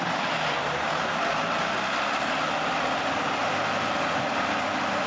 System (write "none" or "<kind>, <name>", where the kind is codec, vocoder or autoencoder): none